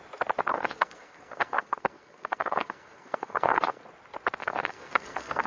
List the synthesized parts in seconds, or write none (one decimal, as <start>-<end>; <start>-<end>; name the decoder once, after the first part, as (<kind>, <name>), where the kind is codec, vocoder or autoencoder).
0.5-3.8 (codec, SNAC); 4.4-5.5